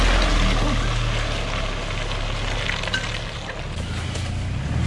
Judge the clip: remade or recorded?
recorded